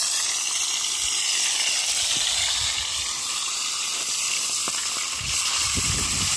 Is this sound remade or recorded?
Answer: recorded